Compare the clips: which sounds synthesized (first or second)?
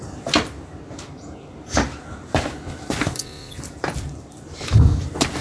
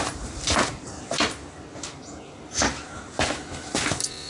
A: first